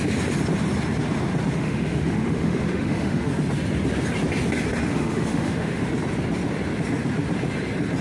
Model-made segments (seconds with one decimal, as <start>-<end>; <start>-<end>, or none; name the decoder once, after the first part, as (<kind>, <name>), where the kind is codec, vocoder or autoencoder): 1.6-3.3 (autoencoder, DAC-VAE); 4.9-5.9